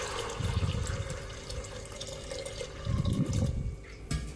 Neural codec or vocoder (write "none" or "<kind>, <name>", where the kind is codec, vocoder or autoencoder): none